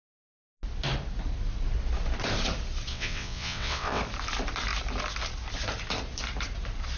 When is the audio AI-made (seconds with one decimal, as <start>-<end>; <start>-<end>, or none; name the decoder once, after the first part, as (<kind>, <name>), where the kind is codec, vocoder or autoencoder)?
2.9-4.0 (vocoder, WaveNeXt)